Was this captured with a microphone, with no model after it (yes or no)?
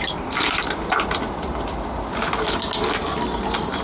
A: yes